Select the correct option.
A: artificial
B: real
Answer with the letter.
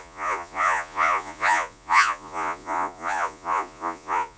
A